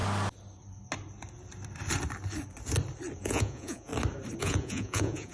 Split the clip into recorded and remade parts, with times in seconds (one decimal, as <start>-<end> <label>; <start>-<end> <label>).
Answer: 0.0-3.2 recorded; 3.2-3.9 remade; 3.9-4.4 recorded; 4.4-5.3 remade